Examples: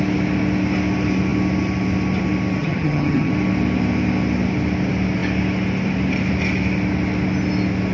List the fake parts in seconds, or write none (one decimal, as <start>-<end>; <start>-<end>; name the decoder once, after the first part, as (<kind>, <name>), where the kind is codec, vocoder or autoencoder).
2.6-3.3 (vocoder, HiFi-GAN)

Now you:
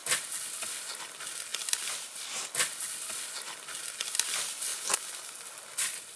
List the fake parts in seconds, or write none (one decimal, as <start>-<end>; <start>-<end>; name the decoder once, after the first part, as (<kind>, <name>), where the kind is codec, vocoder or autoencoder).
none

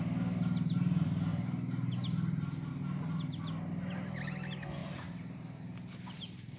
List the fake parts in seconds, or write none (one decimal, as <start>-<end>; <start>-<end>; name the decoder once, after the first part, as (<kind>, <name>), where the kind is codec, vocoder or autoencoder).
4.8-6.6 (vocoder, BigVGAN v2)